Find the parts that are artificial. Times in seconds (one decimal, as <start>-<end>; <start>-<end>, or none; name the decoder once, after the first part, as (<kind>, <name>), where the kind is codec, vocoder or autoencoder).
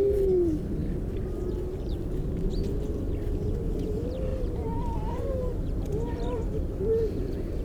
4.3-6.8 (vocoder, BigVGAN v2)